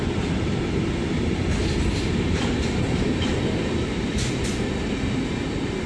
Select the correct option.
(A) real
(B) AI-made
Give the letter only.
B